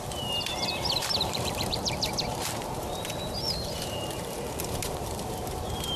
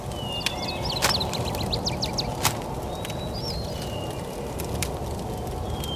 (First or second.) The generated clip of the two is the first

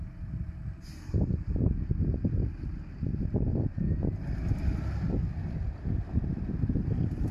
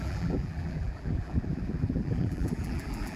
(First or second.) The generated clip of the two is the second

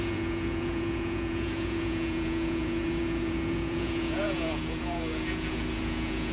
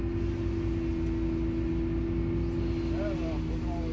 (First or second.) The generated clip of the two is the first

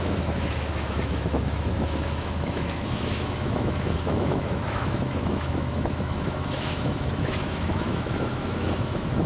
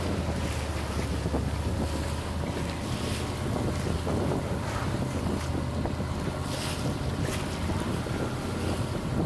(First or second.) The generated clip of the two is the first